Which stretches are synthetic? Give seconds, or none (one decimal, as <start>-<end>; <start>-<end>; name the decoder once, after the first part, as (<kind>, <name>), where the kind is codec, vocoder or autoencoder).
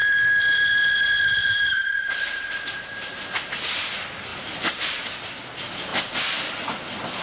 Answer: 0.0-0.9 (vocoder, BigVGAN v2); 1.4-3.1; 4.3-4.9